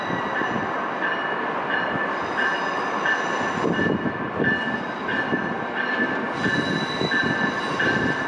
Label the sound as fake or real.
real